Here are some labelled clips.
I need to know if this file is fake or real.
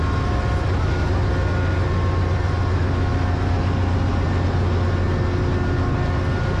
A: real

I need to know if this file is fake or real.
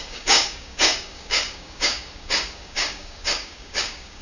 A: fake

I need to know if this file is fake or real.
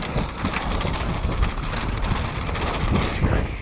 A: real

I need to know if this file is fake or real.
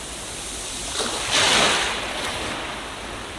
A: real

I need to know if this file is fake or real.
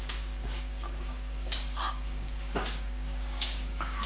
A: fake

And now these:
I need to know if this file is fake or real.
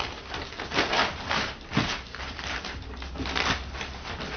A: real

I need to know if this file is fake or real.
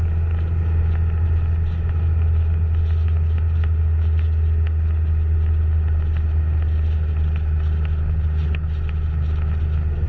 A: real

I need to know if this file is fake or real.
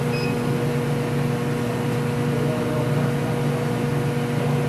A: real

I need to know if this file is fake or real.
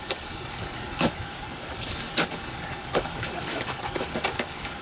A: fake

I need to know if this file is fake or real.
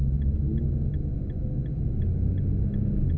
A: real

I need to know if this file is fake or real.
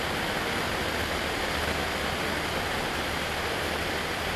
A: real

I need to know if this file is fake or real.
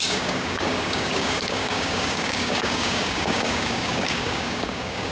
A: fake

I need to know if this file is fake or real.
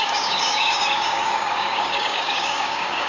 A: fake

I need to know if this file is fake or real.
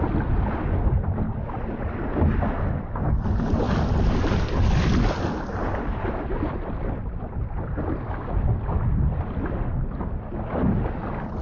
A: real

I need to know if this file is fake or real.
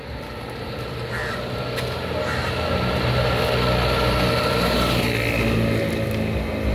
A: real